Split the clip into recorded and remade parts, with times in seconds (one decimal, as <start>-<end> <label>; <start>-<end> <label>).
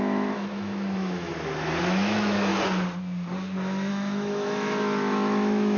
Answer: 0.0-1.3 remade; 1.3-1.8 recorded; 1.8-2.5 remade; 2.5-3.9 recorded; 3.9-5.8 remade